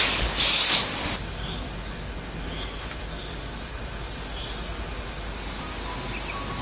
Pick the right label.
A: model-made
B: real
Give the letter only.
B